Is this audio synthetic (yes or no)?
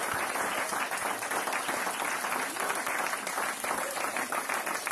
no